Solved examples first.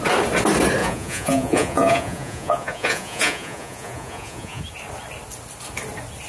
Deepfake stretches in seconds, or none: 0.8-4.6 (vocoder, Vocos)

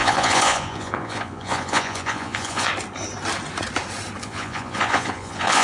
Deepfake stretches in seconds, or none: 0.0-2.7 (vocoder, Vocos); 4.2-5.6

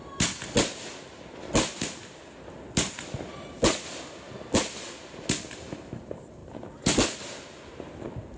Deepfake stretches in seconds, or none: none

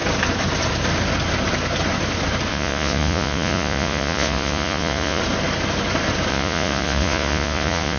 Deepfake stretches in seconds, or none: 2.5-5.2 (vocoder, Vocos); 6.3-8.0

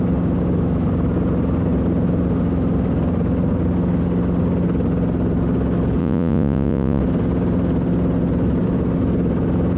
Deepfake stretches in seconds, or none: 6.0-7.0 (vocoder, Vocos)

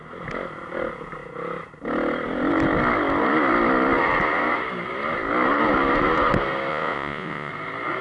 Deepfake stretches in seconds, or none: 6.7-7.5 (vocoder, Vocos)

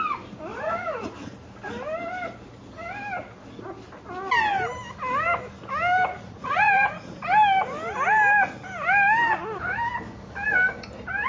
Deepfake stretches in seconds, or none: 0.5-1.0 (vocoder, Vocos); 6.1-7.2